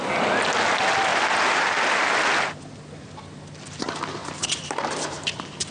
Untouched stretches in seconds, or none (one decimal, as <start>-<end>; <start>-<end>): 0.0-4.2; 5.3-5.7